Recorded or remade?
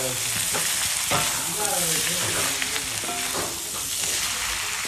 recorded